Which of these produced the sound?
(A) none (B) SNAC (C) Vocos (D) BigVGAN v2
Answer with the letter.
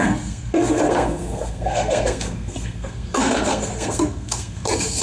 B